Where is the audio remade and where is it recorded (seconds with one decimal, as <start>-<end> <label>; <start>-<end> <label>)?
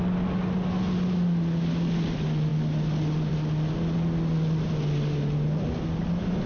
0.0-6.5 recorded